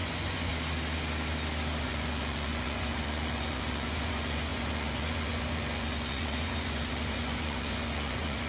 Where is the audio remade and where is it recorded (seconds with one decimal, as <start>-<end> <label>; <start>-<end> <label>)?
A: 0.0-0.5 remade; 0.5-1.8 recorded; 1.8-8.5 remade